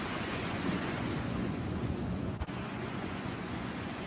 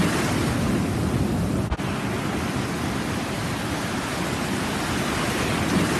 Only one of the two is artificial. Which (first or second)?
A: first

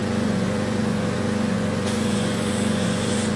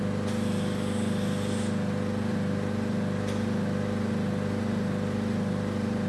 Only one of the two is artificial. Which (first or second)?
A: first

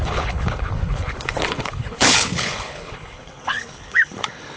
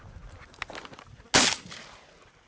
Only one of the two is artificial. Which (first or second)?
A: first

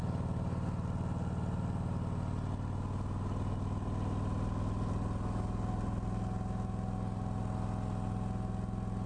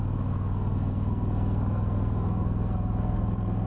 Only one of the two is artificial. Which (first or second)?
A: second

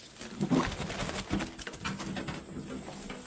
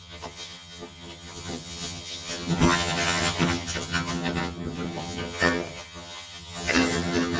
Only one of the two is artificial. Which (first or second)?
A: second